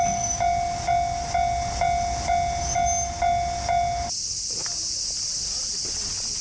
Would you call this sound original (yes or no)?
yes